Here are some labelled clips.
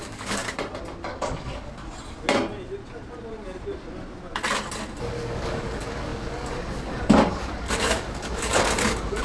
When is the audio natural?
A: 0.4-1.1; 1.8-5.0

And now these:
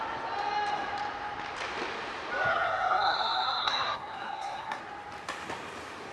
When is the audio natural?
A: 0.0-2.5; 4.8-6.1

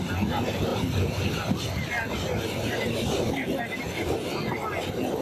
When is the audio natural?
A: 0.0-5.2

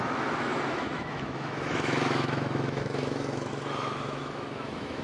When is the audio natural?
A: none